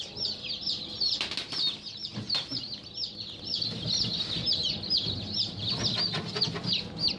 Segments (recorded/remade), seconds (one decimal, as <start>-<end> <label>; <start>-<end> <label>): 0.0-7.2 recorded